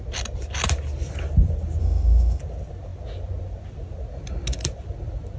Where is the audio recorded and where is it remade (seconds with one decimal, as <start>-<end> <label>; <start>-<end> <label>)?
0.0-1.8 recorded; 1.8-2.4 remade; 2.4-5.4 recorded